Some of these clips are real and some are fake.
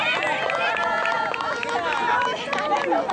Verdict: real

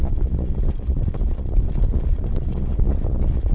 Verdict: fake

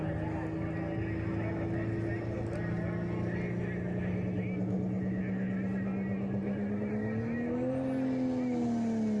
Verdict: real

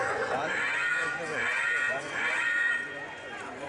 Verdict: fake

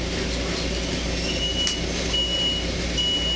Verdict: real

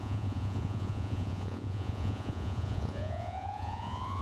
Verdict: fake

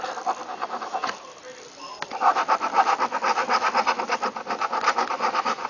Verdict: real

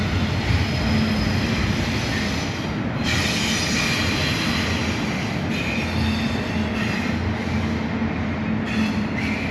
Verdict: real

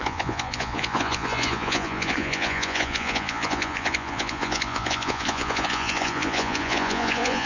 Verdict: fake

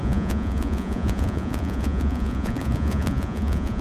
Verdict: fake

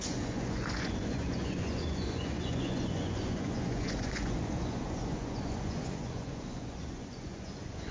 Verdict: fake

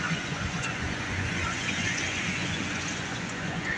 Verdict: fake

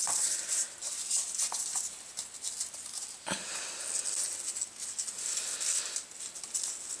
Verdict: real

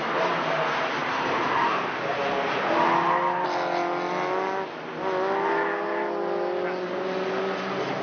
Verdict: real